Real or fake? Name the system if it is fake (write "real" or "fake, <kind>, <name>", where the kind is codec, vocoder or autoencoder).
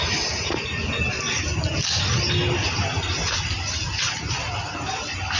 real